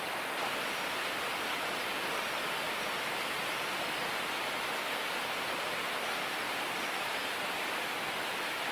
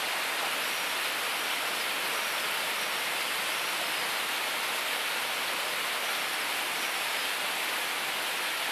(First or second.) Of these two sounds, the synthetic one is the first